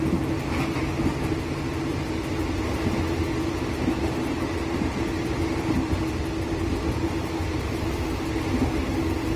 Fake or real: real